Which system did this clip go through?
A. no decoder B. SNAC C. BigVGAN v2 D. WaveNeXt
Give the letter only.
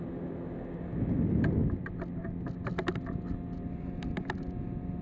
A